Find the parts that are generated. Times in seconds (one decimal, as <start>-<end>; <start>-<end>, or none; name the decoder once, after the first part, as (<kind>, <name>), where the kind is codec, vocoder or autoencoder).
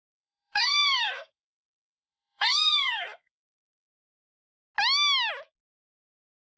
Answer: 0.0-3.9 (codec, SNAC)